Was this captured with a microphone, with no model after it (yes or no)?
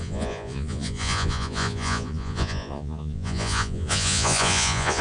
no